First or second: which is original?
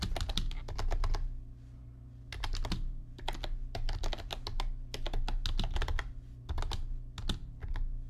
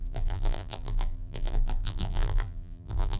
first